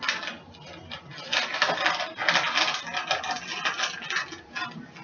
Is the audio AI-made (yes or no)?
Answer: no